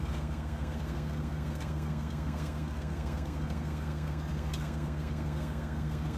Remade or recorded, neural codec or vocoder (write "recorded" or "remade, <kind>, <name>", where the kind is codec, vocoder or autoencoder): remade, codec, SNAC